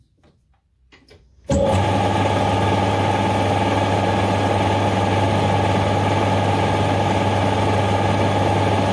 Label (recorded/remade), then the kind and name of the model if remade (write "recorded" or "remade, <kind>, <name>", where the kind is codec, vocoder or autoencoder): recorded